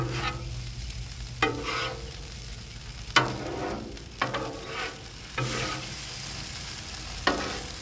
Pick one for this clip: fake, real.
real